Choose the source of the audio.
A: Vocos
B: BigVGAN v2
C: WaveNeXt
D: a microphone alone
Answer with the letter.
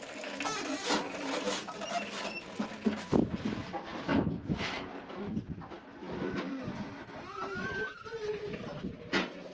D